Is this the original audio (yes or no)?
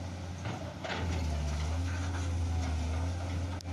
yes